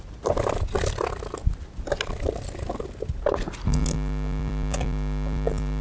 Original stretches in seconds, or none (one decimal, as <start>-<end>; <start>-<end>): 0.0-5.8